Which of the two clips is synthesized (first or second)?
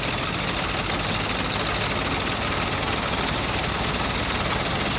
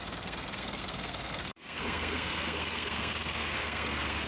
second